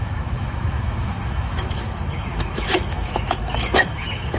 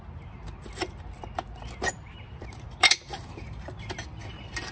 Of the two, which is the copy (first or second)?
first